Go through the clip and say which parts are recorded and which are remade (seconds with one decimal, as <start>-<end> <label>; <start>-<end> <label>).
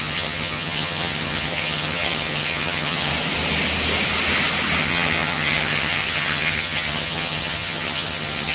0.0-3.1 remade; 3.1-4.8 recorded; 4.8-8.5 remade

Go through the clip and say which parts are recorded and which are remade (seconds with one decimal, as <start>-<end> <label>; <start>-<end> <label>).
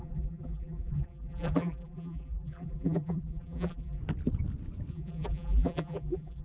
0.0-4.0 remade; 4.0-4.9 recorded; 4.9-6.4 remade